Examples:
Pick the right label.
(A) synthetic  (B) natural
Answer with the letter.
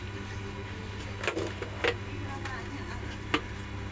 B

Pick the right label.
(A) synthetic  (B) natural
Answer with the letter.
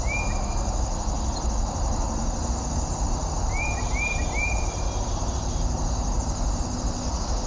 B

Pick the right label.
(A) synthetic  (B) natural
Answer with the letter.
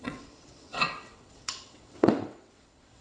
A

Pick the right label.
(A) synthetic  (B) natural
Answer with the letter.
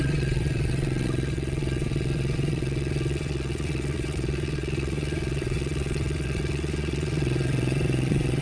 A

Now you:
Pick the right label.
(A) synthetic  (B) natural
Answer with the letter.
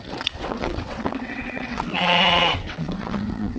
A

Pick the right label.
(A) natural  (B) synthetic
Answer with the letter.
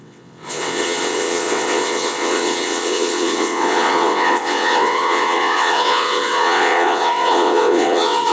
B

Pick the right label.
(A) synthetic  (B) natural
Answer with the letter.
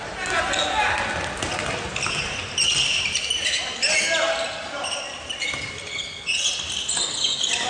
B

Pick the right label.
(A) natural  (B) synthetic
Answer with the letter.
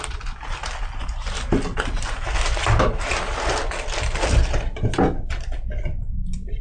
A